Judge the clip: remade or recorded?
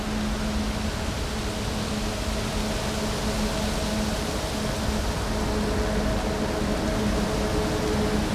recorded